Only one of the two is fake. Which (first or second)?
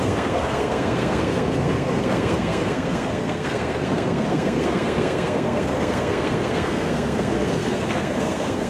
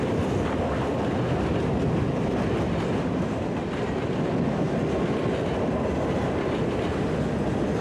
first